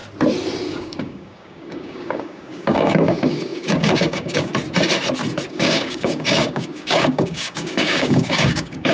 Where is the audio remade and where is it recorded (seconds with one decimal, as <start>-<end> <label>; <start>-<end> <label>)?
0.0-0.7 recorded; 0.7-4.5 remade; 4.5-5.5 recorded; 5.5-8.9 remade

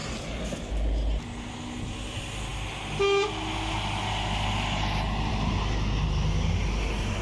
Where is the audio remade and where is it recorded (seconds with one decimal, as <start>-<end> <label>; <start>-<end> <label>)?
0.0-7.2 recorded

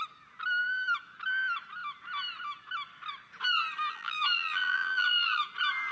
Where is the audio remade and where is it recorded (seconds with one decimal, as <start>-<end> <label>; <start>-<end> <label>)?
0.0-3.9 recorded; 3.9-5.4 remade; 5.4-5.9 recorded

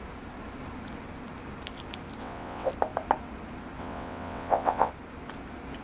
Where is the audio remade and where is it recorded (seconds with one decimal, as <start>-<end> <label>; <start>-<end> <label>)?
0.0-2.2 recorded; 2.2-2.7 remade; 2.7-3.8 recorded; 3.8-4.9 remade; 4.9-5.8 recorded